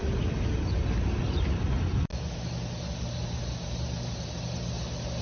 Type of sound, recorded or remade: recorded